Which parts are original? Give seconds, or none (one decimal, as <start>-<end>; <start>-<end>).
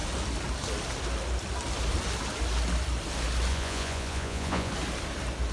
0.0-3.5; 4.7-5.5